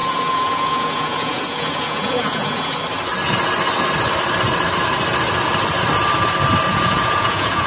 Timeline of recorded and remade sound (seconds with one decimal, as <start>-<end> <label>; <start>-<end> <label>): 0.0-2.8 remade; 2.8-6.7 recorded; 6.7-7.7 remade